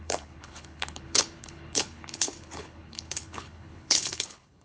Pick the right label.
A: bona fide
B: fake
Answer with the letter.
B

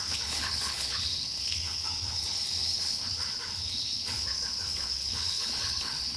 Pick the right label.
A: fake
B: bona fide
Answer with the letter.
A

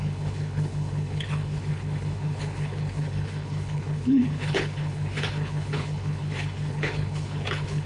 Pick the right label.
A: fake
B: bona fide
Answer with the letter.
A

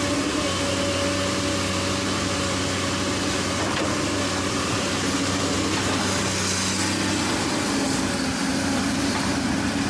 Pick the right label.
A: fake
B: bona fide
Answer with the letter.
B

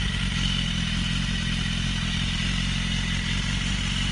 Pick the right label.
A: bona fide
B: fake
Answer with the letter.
A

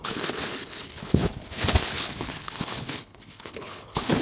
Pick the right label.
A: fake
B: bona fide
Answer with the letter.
A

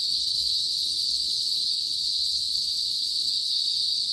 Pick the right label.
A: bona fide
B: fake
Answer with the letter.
B